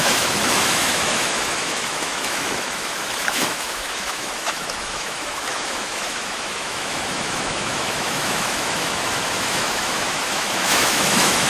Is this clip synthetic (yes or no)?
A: yes